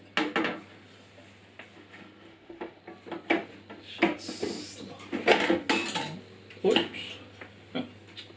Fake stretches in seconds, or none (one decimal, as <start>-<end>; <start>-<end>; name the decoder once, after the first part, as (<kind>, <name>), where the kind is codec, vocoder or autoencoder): 2.3-2.8 (autoencoder, DAC-VAE)